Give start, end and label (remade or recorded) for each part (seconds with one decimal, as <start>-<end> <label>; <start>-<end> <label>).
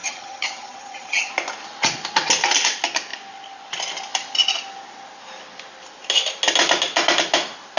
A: 0.0-1.3 remade; 1.3-7.8 recorded